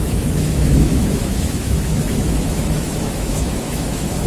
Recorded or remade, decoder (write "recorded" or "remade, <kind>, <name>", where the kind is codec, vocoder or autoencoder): remade, autoencoder, DAC-VAE